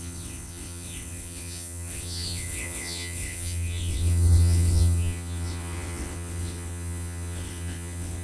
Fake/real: fake